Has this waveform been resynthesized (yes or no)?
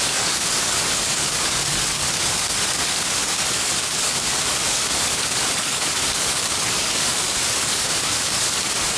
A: yes